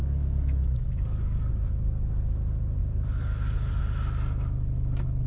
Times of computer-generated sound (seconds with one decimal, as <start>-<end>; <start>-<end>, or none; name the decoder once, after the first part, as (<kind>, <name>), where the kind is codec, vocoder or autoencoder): 0.0-1.5 (codec, DAC); 2.8-3.8